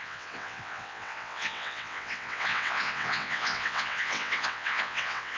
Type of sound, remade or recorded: remade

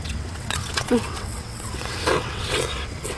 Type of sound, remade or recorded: remade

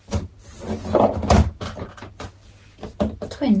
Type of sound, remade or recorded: recorded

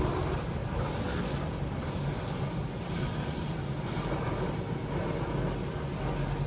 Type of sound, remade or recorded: recorded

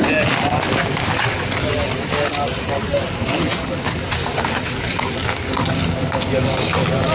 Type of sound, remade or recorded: recorded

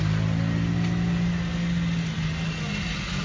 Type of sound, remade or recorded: recorded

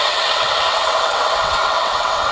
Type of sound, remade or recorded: remade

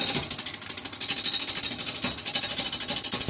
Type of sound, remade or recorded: recorded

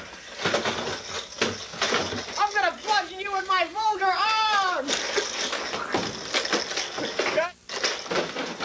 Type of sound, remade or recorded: recorded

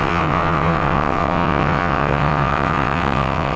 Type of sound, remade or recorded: remade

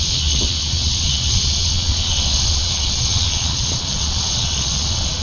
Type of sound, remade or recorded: remade